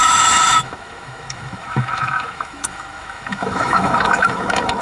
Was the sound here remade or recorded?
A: remade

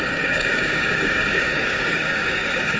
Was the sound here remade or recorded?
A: remade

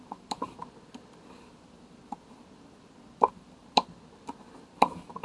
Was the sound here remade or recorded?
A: recorded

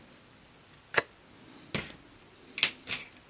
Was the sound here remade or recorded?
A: recorded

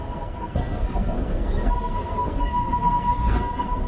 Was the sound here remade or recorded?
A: remade